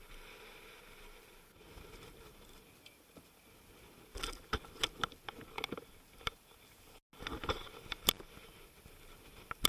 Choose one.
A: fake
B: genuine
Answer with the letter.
B